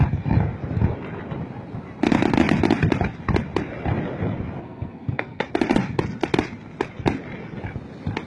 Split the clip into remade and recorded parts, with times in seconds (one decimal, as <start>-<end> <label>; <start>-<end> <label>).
0.0-4.6 recorded; 4.6-5.4 remade; 5.4-8.3 recorded